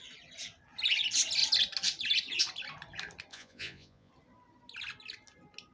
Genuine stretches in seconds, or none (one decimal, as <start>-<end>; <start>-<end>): 0.0-3.3; 4.1-5.7

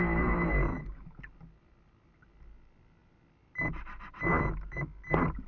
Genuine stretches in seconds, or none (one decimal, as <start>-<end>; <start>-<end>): 0.0-0.7; 1.2-5.5

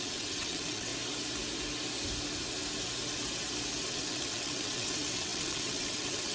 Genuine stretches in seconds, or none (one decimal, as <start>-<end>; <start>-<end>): 0.9-3.9

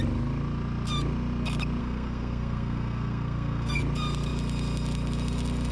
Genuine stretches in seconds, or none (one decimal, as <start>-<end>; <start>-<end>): 0.0-1.8; 3.8-5.7